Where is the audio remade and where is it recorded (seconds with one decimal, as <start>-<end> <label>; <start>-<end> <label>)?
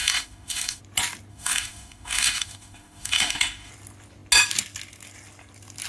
0.0-0.8 remade; 0.8-1.3 recorded; 1.3-3.7 remade; 3.7-5.9 recorded